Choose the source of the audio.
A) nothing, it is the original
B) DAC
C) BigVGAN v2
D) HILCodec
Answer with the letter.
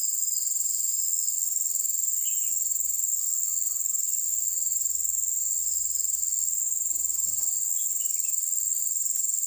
A